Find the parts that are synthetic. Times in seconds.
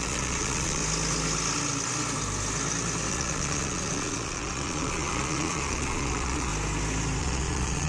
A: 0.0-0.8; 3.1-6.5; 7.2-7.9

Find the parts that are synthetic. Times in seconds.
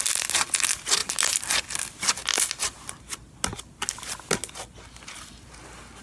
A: none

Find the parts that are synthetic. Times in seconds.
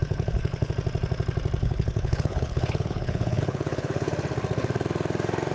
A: 0.0-0.7; 1.6-4.1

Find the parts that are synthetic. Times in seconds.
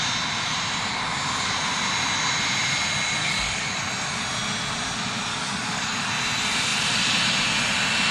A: 3.2-3.8; 5.3-6.1